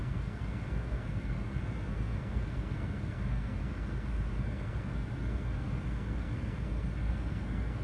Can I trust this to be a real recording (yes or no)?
no